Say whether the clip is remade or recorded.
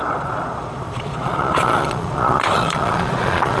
remade